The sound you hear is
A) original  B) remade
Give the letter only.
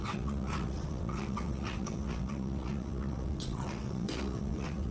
B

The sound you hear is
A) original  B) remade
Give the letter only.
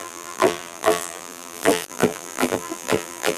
B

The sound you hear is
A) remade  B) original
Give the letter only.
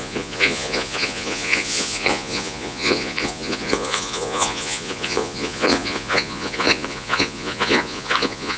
A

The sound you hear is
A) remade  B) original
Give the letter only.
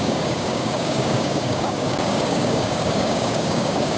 A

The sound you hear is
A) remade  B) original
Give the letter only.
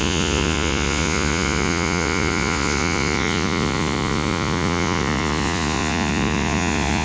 A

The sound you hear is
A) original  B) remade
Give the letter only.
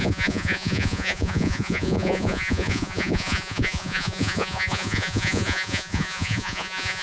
B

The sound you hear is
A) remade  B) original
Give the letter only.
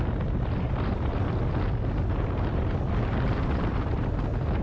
B